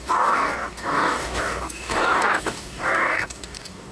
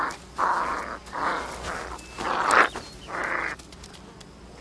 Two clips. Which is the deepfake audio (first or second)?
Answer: first